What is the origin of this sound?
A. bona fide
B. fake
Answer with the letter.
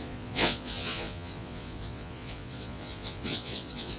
B